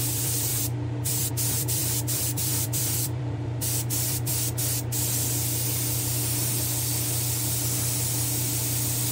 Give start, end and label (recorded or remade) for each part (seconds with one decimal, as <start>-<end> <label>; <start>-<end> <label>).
0.0-4.3 remade; 4.3-9.1 recorded